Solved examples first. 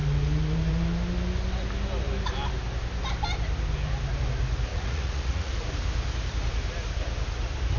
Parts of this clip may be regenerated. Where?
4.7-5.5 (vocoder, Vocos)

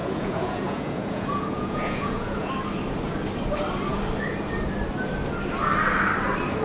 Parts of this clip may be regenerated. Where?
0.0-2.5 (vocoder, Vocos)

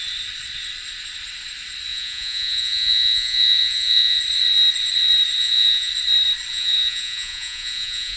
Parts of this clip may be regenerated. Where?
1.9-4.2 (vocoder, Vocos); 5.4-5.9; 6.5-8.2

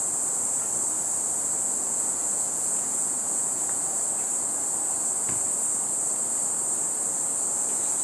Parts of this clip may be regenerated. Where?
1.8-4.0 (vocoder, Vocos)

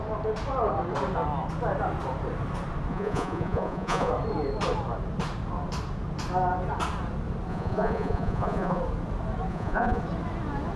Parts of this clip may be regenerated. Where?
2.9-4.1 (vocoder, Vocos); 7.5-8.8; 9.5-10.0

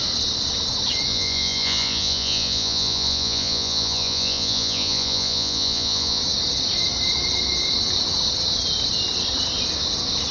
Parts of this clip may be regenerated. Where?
1.1-6.2 (vocoder, Vocos)

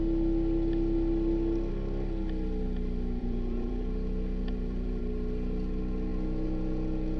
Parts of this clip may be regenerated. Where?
3.2-5.0 (vocoder, Vocos); 6.1-7.2

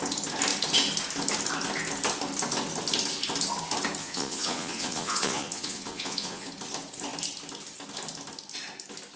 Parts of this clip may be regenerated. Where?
4.0-6.5 (vocoder, Vocos)